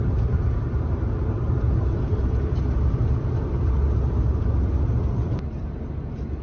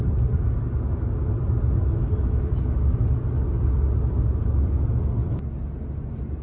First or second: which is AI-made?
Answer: first